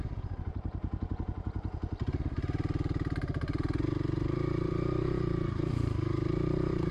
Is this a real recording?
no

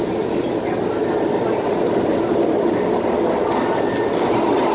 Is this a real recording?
yes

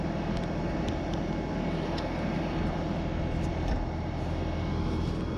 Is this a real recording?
yes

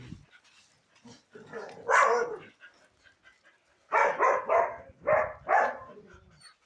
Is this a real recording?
yes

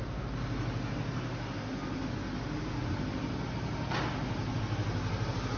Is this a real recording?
yes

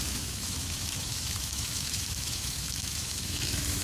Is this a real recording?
no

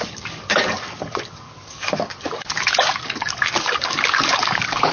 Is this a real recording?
no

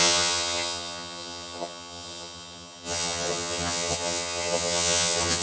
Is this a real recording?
no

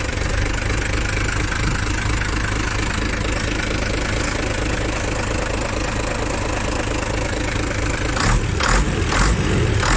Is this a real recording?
yes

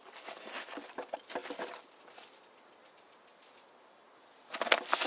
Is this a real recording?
yes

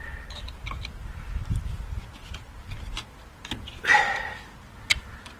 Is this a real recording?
yes